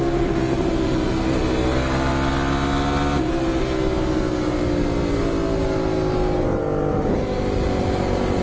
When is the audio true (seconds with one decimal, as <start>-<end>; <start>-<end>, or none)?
0.0-8.4